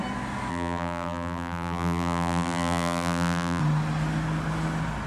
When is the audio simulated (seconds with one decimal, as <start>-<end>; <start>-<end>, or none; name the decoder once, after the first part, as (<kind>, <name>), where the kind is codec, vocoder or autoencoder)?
0.5-3.6 (vocoder, BigVGAN v2)